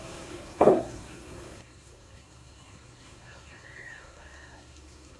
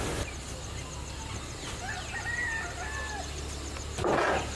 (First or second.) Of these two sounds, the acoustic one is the second